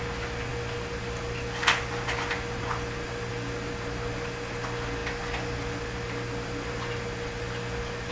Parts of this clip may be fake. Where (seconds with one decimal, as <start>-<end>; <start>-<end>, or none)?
none